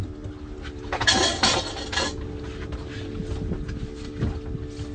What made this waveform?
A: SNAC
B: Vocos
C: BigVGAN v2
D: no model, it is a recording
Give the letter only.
D